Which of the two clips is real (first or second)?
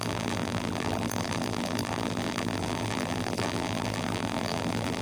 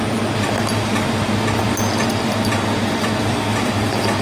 second